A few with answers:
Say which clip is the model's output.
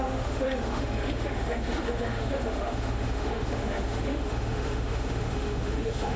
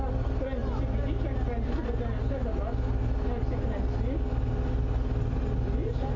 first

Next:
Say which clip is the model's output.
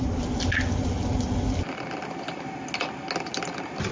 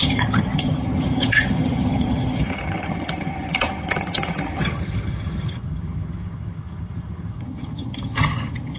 second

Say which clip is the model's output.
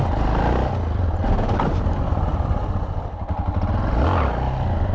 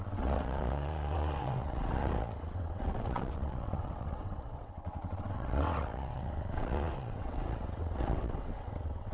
second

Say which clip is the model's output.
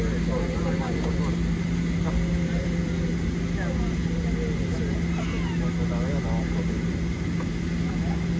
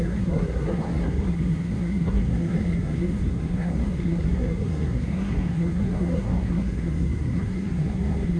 second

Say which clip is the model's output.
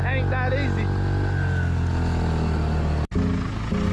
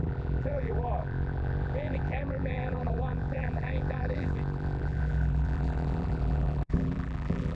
second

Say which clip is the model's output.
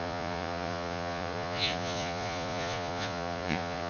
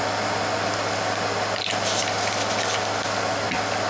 first